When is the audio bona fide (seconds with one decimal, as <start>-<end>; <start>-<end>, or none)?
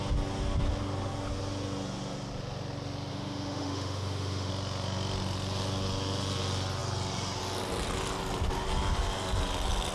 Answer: 0.0-3.1; 4.5-9.9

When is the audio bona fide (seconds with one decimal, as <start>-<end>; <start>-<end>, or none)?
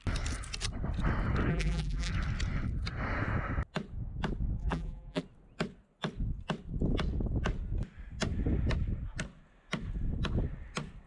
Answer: 0.0-1.5; 2.1-4.6; 5.2-11.1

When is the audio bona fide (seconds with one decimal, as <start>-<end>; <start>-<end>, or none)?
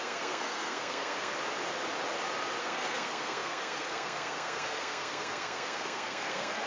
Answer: 1.3-2.6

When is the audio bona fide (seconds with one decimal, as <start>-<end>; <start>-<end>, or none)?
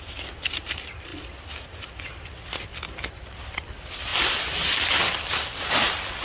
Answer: 0.0-6.2